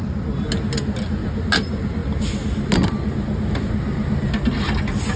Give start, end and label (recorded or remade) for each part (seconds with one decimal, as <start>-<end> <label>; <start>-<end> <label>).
0.0-5.2 recorded